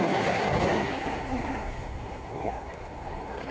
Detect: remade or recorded remade